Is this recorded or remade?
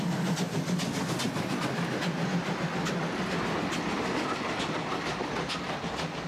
recorded